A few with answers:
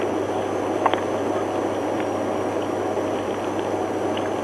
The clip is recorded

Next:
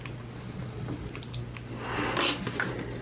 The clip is recorded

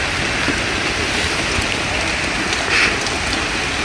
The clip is recorded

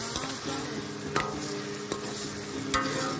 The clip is recorded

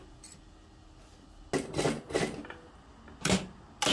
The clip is recorded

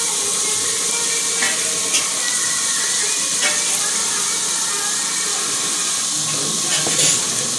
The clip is recorded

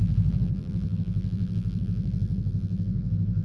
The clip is remade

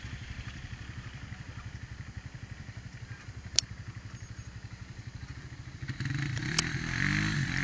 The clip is remade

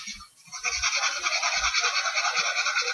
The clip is recorded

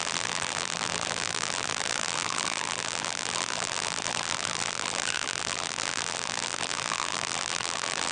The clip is remade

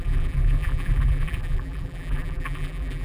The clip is remade